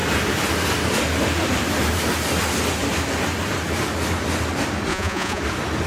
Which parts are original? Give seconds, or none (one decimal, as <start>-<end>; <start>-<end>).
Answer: 0.0-4.9; 5.4-5.9